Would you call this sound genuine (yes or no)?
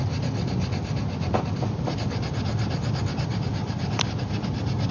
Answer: yes